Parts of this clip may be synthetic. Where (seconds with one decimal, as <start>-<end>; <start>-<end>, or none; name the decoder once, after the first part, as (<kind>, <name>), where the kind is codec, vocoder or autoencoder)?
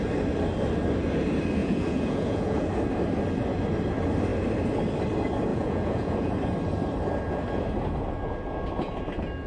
1.6-2.8 (vocoder, Vocos); 5.5-6.3